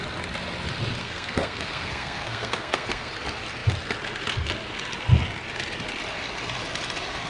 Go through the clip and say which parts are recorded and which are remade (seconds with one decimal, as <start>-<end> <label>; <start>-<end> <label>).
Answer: 0.0-1.0 recorded; 1.0-3.1 remade; 3.1-7.3 recorded